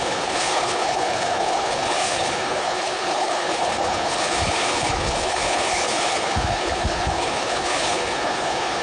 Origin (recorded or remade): remade